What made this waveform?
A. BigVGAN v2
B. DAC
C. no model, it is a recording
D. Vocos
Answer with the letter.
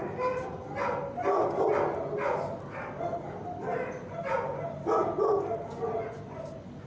C